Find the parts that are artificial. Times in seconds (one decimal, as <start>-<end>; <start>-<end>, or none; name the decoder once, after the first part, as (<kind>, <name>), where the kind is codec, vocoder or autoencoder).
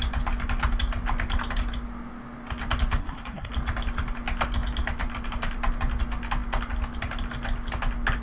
3.0-3.5 (codec, SNAC)